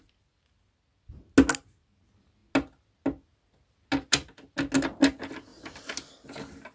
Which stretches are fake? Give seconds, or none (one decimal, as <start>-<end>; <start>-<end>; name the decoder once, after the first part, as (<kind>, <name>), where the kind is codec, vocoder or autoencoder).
none